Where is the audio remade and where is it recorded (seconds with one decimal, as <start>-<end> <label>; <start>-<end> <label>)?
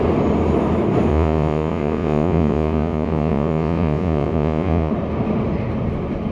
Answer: 0.0-1.1 recorded; 1.1-4.9 remade; 4.9-6.3 recorded